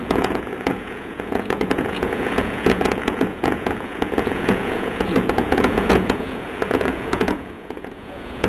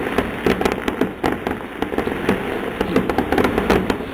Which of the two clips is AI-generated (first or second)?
first